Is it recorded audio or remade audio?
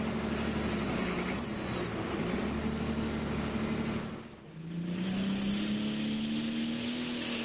recorded